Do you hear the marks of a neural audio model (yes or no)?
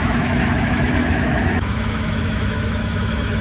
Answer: yes